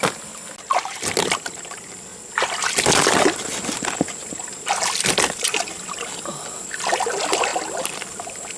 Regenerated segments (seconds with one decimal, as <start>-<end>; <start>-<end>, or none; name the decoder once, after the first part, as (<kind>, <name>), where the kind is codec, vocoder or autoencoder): none